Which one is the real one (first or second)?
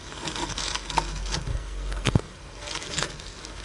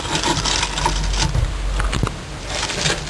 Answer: second